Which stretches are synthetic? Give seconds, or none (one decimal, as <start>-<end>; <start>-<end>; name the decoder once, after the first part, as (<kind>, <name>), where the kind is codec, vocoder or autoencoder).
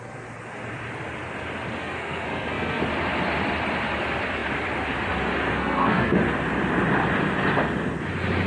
1.8-2.8 (codec, SNAC); 5.5-6.2